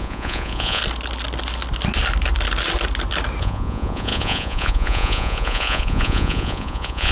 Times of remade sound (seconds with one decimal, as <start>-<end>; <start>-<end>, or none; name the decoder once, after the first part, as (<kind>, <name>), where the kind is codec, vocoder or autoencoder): 0.0-0.8 (vocoder, Vocos); 3.4-7.1